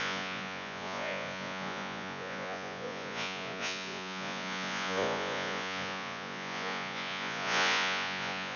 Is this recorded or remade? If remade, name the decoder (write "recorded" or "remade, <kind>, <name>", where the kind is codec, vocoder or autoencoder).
remade, vocoder, Vocos